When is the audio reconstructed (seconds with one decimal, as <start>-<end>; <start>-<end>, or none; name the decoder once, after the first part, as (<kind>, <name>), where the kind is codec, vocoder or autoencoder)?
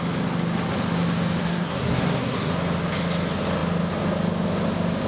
1.4-2.5 (codec, SNAC)